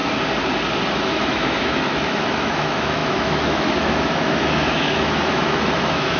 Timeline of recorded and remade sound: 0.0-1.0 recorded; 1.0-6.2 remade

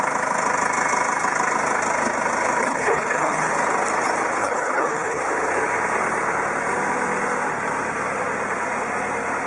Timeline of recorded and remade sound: 0.0-2.6 recorded; 2.6-3.5 remade; 3.5-4.4 recorded; 4.4-5.2 remade; 5.2-9.5 recorded

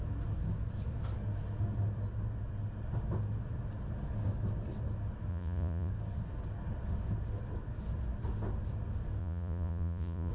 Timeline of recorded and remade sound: 0.0-5.3 recorded; 5.3-5.9 remade; 5.9-9.2 recorded; 9.2-10.3 remade

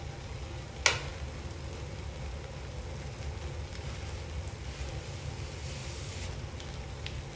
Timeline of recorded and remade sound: 0.0-7.4 recorded

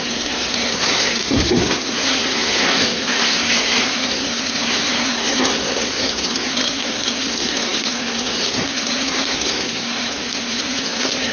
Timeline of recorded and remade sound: 0.0-11.3 remade

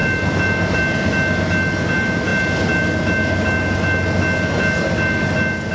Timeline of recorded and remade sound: 0.0-5.7 recorded

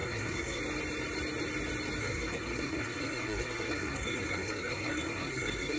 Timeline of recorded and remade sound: 0.0-0.6 remade; 0.6-2.0 recorded; 2.0-5.8 remade

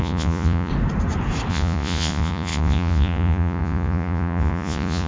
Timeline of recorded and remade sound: 0.0-0.7 remade; 0.7-1.5 recorded; 1.5-5.1 remade